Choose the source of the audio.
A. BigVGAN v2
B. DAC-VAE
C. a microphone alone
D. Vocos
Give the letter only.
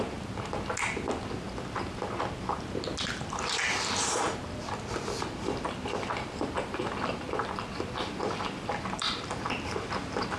C